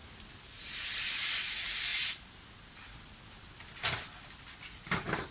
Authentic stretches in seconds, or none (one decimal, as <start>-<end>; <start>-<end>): 0.0-5.3